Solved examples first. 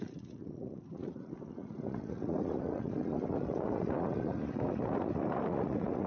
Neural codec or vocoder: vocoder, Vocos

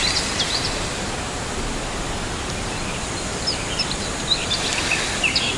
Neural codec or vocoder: none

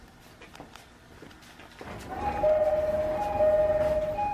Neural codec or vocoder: none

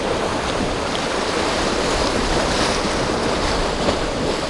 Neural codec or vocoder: none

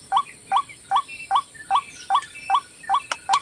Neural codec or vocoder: none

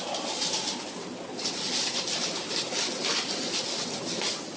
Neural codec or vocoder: none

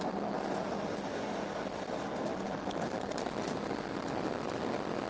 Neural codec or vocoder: none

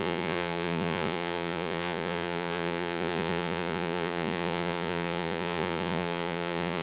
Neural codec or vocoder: vocoder, Vocos